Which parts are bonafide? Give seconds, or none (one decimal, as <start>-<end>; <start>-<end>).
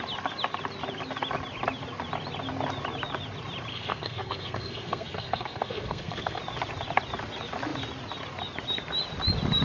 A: 0.0-3.7; 6.4-9.6